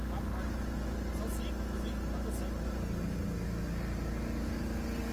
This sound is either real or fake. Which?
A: real